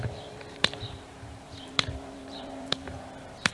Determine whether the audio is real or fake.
fake